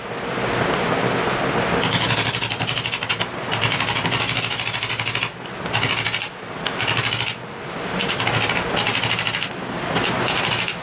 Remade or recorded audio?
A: recorded